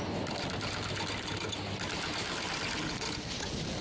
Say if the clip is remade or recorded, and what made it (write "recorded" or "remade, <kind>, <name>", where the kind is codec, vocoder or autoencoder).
recorded